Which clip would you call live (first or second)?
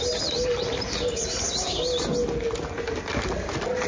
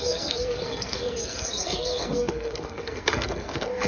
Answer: first